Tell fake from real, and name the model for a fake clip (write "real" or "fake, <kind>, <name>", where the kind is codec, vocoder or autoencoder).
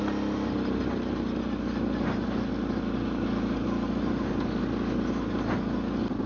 real